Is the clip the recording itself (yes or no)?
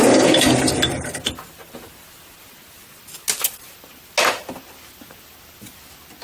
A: yes